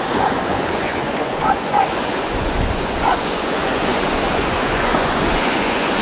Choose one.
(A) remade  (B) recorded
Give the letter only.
A